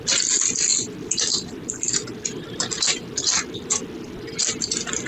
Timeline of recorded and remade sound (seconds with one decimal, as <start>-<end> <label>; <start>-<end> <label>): 0.0-0.7 recorded; 0.7-3.8 remade; 3.8-5.1 recorded